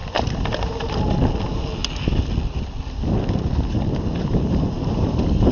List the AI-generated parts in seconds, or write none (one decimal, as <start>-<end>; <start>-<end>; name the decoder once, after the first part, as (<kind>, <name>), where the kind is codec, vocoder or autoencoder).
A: none